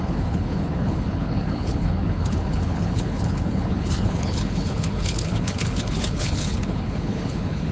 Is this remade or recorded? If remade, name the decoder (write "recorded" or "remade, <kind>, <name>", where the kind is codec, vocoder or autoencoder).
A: remade, codec, HILCodec